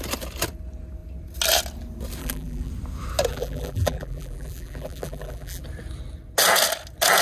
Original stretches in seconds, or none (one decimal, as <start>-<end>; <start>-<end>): 0.0-2.2; 2.7-3.3; 5.6-7.2